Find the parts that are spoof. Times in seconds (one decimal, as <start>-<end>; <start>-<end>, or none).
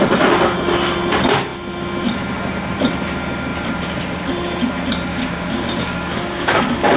5.1-6.6